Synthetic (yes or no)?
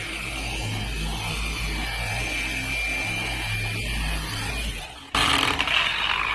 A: no